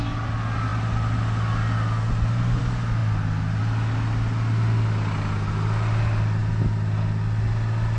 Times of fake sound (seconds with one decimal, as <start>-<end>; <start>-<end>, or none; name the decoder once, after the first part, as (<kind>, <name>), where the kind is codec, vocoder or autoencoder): none